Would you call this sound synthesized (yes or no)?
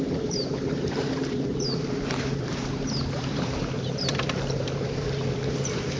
yes